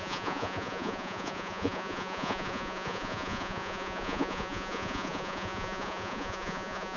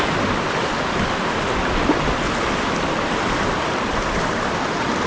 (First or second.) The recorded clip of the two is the second